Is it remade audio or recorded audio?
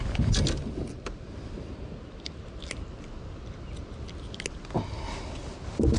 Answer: recorded